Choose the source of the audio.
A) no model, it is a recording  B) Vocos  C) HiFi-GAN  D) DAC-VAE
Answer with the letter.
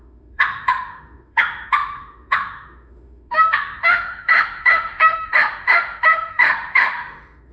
D